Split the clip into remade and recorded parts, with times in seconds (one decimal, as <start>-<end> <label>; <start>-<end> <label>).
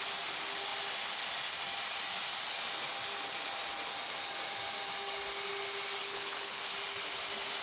0.0-6.0 recorded; 6.0-6.6 remade; 6.6-7.6 recorded